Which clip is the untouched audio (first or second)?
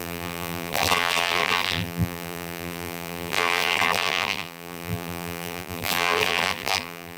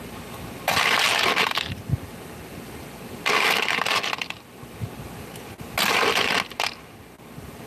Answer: second